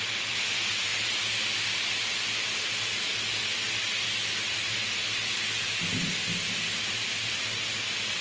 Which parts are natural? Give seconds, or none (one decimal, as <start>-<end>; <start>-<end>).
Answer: 0.0-8.2